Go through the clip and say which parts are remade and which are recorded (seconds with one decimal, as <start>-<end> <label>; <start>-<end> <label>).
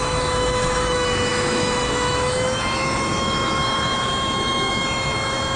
0.0-5.6 remade